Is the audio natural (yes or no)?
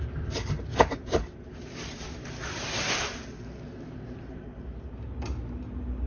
no